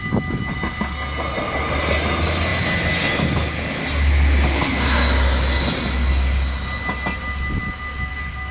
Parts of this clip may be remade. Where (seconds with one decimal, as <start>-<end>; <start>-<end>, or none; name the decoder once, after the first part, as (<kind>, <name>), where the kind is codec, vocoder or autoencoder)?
none